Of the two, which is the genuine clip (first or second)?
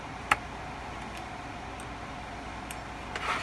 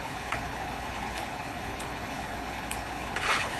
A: first